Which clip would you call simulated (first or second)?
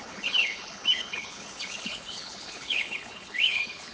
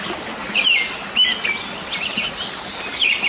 first